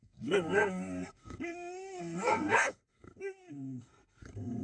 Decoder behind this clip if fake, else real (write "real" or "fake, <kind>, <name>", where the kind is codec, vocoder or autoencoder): fake, codec, SNAC